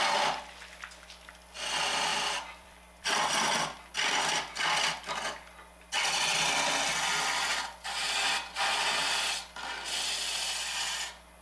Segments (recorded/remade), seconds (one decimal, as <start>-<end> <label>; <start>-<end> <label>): 0.0-2.1 recorded; 2.1-3.3 remade; 3.3-11.4 recorded